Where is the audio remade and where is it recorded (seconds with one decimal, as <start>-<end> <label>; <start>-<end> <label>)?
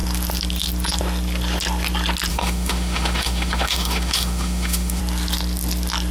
0.0-2.3 recorded; 2.3-5.0 remade; 5.0-6.1 recorded